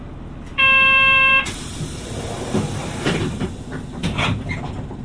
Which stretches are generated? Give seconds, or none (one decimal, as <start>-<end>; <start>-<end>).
0.5-3.5